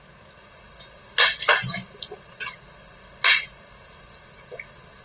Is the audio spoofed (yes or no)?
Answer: no